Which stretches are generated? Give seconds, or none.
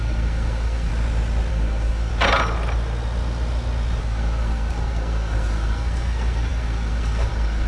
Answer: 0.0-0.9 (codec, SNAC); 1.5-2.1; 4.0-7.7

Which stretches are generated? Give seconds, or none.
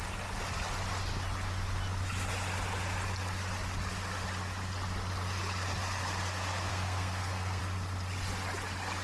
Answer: 6.7-7.6 (codec, SNAC)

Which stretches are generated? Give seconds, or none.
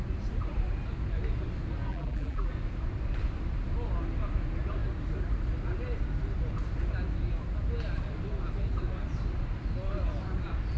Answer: 1.9-2.5 (vocoder, BigVGAN v2)